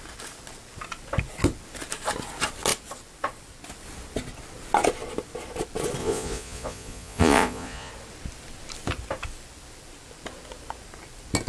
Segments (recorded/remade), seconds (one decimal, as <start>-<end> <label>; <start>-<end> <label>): 0.0-6.0 recorded; 6.0-7.9 remade; 7.9-11.5 recorded